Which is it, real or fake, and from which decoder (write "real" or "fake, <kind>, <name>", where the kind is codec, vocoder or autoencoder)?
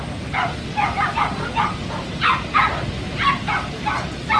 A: real